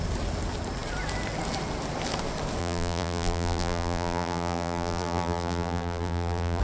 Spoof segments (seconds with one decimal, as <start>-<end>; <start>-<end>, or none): 2.6-6.6